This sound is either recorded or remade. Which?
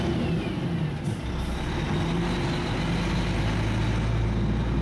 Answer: recorded